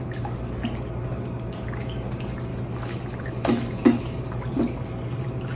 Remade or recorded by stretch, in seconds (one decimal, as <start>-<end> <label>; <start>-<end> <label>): 0.0-2.5 recorded; 2.5-4.3 remade; 4.3-5.6 recorded